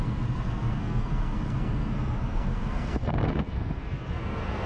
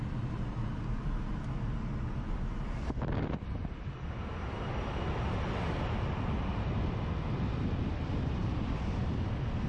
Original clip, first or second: second